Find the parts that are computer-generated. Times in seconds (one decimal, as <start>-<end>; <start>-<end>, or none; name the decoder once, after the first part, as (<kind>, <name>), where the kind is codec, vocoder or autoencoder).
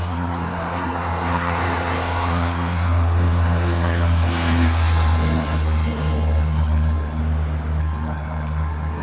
0.0-7.2 (codec, SNAC); 7.8-9.0